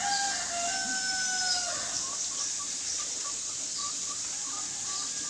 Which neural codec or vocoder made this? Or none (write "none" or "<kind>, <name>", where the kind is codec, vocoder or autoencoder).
none